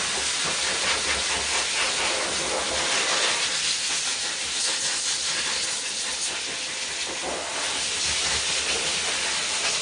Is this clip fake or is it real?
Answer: real